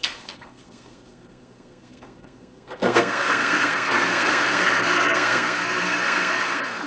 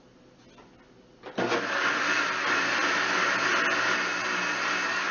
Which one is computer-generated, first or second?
first